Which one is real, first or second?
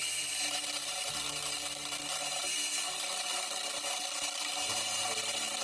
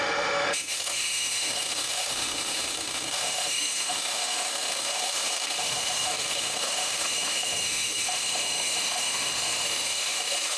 first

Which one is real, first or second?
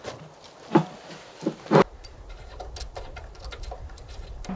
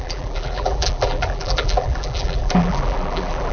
first